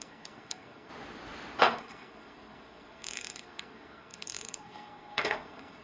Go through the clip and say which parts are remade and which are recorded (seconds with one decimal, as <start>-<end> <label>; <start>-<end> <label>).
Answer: 0.0-0.9 remade; 0.9-1.6 recorded; 1.6-5.8 remade